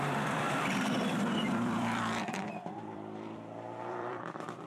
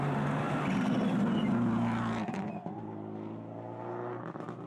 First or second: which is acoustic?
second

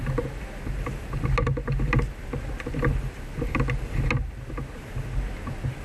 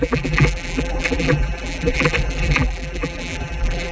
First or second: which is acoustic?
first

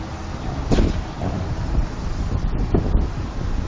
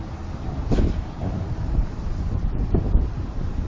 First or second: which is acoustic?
first